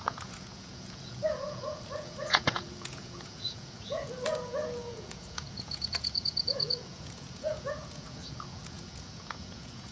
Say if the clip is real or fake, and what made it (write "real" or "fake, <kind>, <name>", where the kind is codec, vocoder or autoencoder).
fake, vocoder, Vocos